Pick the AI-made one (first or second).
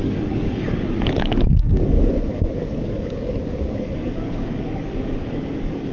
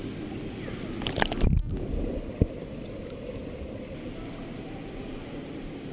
first